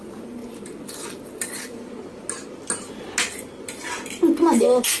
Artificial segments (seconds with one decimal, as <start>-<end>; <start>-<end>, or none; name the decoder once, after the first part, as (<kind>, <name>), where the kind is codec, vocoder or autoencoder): none